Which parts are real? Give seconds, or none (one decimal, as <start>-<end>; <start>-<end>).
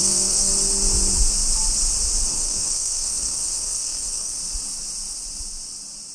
0.5-2.3; 4.4-6.1